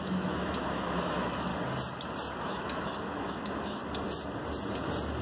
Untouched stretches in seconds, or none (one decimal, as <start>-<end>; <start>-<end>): 1.5-2.4; 3.8-5.2